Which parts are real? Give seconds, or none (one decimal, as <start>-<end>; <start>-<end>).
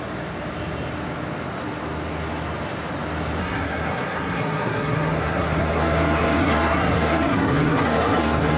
0.0-3.4